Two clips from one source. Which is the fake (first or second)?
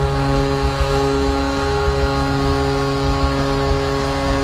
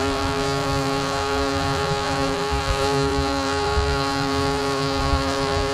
second